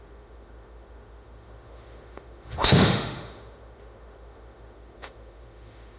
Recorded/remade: remade